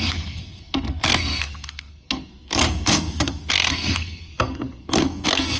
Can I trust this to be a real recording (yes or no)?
no